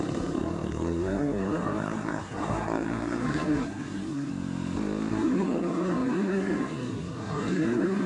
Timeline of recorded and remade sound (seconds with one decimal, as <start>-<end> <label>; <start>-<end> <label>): 0.0-4.3 remade; 4.3-5.1 recorded; 5.1-8.1 remade